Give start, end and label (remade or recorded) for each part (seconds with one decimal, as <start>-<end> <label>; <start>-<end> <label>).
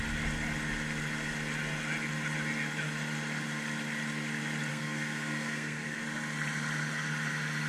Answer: 0.0-4.7 recorded; 4.7-6.0 remade; 6.0-7.7 recorded